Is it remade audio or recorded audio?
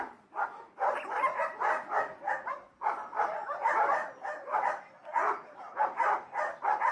recorded